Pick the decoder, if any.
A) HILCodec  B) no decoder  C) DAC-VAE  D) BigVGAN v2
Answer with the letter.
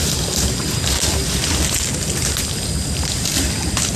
B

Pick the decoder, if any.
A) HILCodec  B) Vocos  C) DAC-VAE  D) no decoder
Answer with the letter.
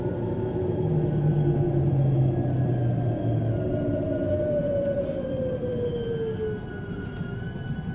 D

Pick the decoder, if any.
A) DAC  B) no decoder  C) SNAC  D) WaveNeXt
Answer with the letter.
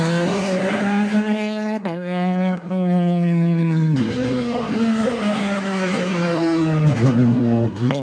C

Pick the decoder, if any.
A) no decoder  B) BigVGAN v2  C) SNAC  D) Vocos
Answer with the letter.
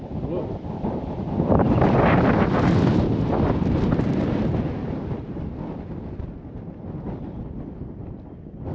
A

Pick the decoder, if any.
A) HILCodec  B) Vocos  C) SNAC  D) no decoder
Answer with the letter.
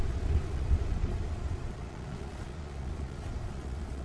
B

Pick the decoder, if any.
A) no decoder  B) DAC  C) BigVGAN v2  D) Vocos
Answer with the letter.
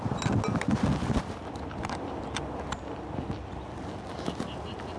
A